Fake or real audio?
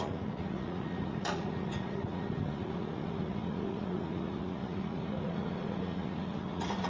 fake